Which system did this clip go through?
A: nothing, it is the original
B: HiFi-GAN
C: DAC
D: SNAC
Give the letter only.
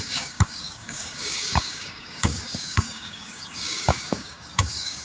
C